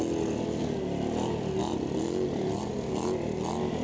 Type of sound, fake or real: real